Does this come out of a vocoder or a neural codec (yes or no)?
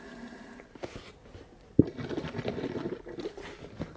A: no